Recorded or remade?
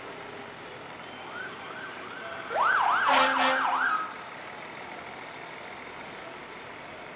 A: recorded